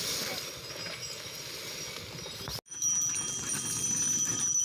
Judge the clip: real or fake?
real